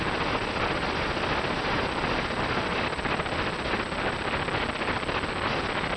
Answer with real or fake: real